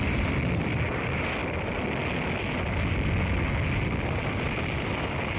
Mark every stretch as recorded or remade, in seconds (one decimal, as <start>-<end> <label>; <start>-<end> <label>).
0.0-5.4 recorded